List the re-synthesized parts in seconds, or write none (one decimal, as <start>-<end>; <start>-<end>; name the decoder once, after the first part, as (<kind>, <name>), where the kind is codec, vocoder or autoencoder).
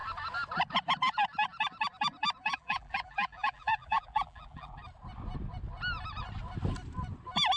2.5-4.8 (vocoder, BigVGAN v2)